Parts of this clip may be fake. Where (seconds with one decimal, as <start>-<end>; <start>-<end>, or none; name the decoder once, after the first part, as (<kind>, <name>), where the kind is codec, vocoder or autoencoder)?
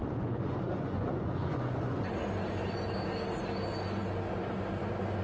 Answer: 0.0-2.1 (vocoder, Vocos)